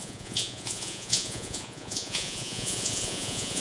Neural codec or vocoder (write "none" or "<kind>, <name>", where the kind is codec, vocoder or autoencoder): vocoder, Vocos